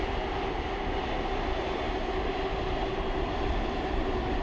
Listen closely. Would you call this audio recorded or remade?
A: recorded